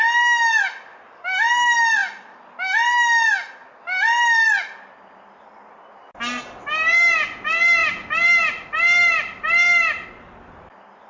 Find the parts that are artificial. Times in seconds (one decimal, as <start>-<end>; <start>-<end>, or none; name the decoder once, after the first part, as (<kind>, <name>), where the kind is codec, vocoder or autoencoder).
none